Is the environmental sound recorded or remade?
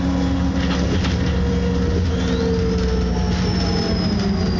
recorded